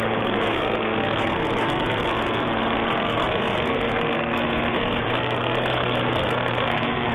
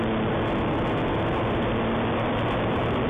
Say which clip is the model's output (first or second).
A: first